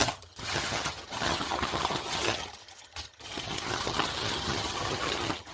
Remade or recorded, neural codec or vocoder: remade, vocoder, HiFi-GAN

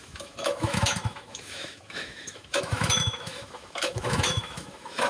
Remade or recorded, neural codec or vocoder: remade, autoencoder, DAC-VAE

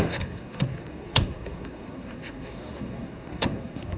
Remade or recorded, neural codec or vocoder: remade, codec, SNAC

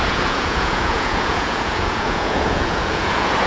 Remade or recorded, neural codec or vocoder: remade, vocoder, Vocos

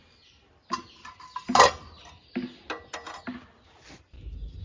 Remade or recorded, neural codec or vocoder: recorded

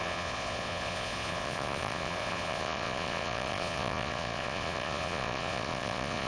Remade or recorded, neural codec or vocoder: remade, vocoder, Vocos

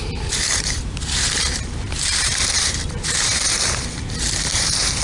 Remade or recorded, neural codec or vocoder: remade, vocoder, BigVGAN v2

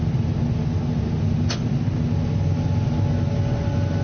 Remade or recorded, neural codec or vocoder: recorded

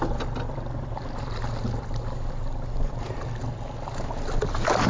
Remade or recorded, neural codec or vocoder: recorded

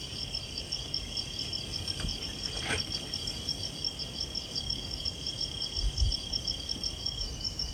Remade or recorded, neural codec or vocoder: remade, codec, DAC